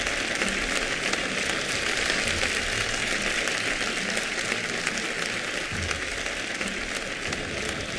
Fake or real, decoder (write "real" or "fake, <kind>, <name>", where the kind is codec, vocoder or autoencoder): real